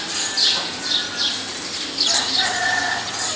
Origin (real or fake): real